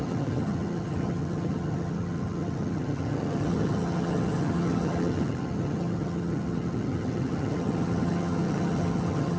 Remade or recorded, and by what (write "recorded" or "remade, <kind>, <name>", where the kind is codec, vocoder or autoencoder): remade, vocoder, HiFi-GAN